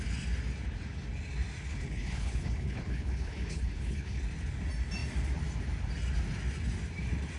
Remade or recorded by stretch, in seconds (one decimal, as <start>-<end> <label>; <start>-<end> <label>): 0.0-1.7 recorded; 1.7-4.2 remade; 4.2-7.4 recorded